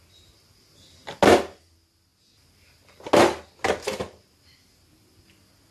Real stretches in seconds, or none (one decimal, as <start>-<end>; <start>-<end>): 0.0-5.7